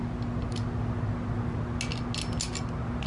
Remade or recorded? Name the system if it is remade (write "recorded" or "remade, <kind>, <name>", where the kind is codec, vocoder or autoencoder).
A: recorded